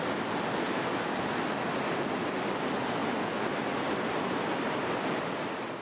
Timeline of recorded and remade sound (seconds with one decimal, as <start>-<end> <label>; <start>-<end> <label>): 0.0-5.8 recorded